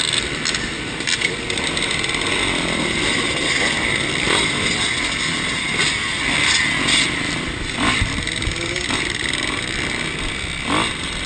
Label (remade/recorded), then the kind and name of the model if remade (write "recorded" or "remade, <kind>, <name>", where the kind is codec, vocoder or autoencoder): recorded